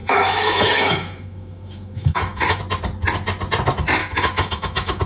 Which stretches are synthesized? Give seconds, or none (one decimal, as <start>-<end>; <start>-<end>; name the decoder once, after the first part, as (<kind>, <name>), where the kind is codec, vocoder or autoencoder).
0.0-2.6 (autoencoder, DAC-VAE); 4.0-5.1